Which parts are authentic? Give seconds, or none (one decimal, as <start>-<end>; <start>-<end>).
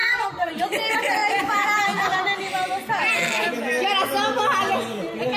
0.5-5.4